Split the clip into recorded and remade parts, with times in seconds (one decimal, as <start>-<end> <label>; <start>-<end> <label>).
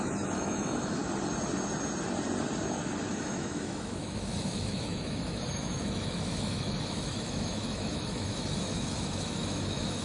0.0-1.0 remade; 1.0-3.0 recorded; 3.0-10.0 remade